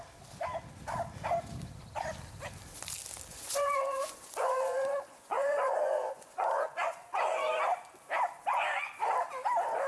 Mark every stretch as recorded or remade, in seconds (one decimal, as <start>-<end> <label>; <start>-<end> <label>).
0.0-3.3 recorded; 3.3-7.5 remade; 7.5-8.5 recorded; 8.5-9.1 remade; 9.1-9.9 recorded